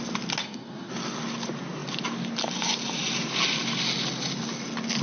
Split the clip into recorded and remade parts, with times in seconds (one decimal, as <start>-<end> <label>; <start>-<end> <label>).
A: 0.0-0.4 recorded; 0.4-0.9 remade; 0.9-5.0 recorded